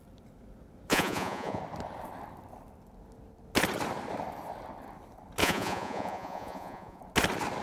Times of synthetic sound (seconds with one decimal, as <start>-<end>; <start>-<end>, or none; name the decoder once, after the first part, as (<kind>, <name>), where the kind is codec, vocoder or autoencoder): 0.9-1.6 (vocoder, Vocos); 5.4-7.0

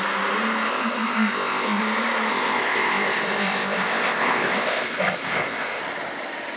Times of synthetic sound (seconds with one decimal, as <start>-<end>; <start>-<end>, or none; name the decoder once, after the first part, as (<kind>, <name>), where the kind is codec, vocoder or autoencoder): 0.7-1.8 (codec, ZipCodec); 2.3-5.8

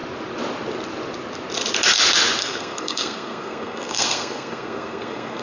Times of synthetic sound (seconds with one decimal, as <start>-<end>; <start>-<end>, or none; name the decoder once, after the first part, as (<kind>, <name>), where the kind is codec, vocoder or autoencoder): 2.4-5.4 (codec, SNAC)

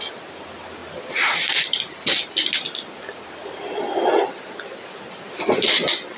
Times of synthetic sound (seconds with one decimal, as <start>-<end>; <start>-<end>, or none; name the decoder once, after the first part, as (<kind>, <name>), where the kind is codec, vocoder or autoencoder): none

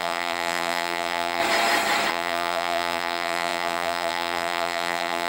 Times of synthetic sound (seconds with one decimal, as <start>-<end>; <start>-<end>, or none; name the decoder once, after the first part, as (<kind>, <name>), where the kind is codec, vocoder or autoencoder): 0.0-1.4 (vocoder, BigVGAN v2); 2.1-5.3